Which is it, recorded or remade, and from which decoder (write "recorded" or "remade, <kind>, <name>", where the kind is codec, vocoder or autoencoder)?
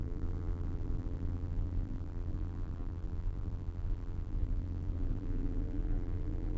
remade, vocoder, BigVGAN v2